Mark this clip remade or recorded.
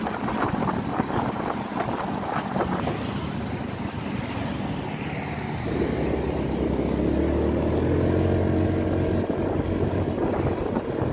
recorded